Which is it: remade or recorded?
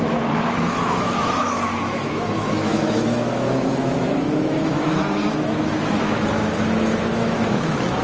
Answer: remade